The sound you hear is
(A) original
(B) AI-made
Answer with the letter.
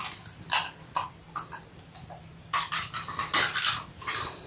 A